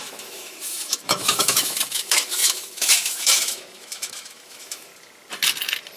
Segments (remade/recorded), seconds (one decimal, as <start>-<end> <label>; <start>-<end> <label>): 0.0-4.9 remade; 4.9-6.0 recorded